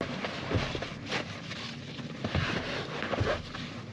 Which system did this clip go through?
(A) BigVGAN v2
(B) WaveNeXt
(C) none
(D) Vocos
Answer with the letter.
C